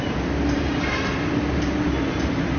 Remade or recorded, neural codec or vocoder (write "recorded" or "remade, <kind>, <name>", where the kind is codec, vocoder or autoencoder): recorded